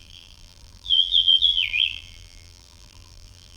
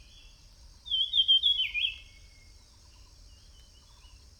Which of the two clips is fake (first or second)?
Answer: first